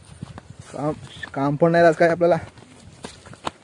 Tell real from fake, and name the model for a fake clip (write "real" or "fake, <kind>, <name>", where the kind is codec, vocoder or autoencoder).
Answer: real